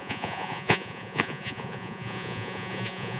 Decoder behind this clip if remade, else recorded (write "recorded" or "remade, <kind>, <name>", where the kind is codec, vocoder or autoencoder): remade, vocoder, Vocos